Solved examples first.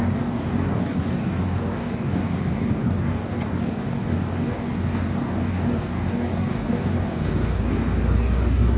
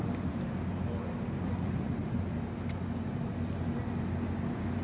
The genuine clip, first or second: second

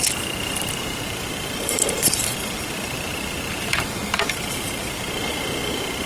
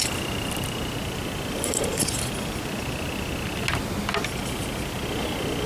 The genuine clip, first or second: second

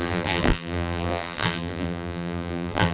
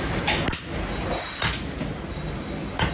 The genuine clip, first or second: second